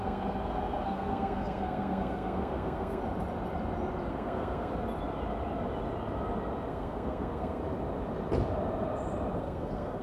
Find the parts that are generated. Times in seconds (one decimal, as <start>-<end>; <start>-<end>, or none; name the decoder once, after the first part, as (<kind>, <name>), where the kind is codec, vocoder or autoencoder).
0.0-3.0 (codec, SNAC); 4.1-4.7; 6.7-7.6; 9.4-10.0